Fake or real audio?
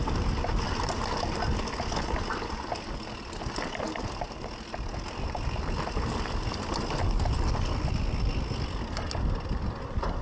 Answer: real